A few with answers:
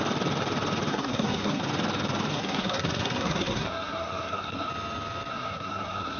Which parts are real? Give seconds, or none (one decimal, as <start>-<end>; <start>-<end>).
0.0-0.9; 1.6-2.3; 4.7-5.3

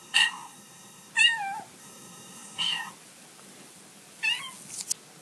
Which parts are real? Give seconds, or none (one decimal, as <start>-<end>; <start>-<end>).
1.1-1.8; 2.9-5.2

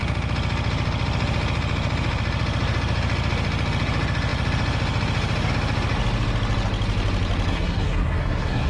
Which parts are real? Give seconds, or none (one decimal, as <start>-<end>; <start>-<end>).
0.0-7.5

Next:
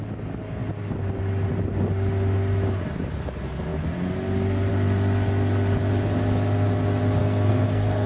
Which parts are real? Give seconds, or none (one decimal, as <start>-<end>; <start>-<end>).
0.0-7.2

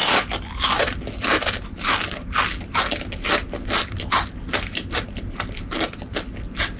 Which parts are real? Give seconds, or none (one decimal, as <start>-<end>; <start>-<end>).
0.0-6.8